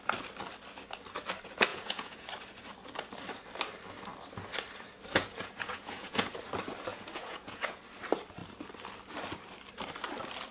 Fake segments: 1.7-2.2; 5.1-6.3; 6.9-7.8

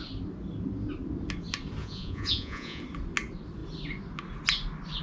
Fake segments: 1.8-2.8